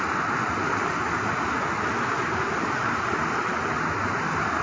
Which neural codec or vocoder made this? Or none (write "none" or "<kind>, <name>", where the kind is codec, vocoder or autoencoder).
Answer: none